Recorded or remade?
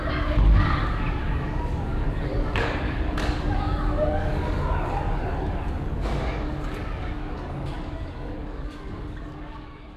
remade